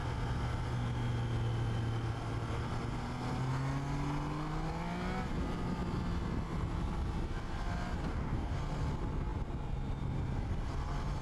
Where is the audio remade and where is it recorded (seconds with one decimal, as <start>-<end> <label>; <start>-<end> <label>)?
0.0-8.1 recorded; 8.1-8.6 remade; 8.6-11.2 recorded